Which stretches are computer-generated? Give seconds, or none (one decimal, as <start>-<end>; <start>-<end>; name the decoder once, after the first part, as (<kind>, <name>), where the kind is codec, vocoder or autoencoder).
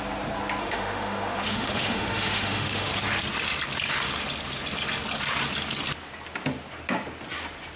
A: 0.6-2.9 (autoencoder, DAC-VAE)